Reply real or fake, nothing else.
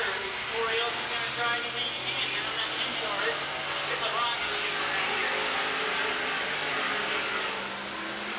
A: real